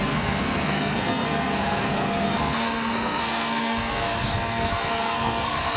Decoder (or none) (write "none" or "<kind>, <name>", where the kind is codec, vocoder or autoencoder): codec, SNAC